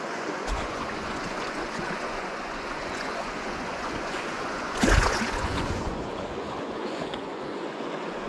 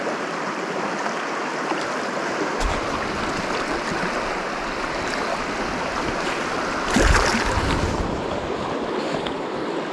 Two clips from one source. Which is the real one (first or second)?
second